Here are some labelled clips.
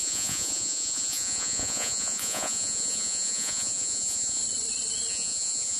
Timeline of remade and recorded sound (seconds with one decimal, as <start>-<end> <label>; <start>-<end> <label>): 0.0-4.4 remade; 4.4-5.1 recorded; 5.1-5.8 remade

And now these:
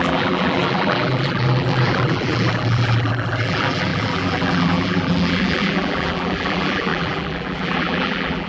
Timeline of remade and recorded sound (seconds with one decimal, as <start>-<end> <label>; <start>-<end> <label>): 0.0-8.5 remade

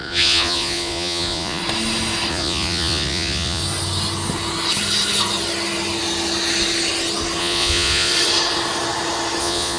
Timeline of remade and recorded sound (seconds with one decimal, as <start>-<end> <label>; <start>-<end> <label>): 0.0-1.6 remade; 1.6-2.3 recorded; 2.3-3.6 remade; 3.6-7.4 recorded; 7.4-8.1 remade; 8.1-9.4 recorded; 9.4-9.8 remade